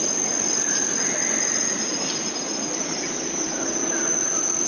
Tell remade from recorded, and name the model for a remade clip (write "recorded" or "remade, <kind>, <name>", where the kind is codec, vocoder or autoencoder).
recorded